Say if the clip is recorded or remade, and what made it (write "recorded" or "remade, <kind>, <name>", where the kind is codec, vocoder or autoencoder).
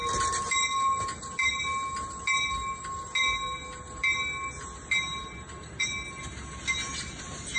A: recorded